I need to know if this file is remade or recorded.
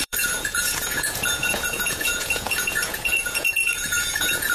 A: remade